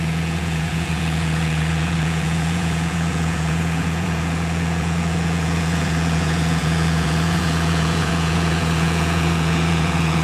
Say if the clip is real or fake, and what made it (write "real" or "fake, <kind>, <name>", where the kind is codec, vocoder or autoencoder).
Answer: fake, vocoder, Vocos